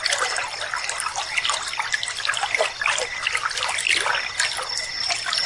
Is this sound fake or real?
real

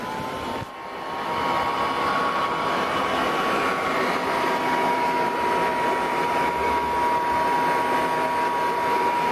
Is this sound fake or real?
real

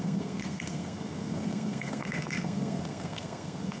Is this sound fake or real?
fake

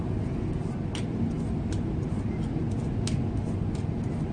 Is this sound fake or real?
real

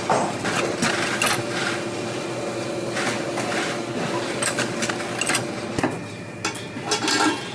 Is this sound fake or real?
real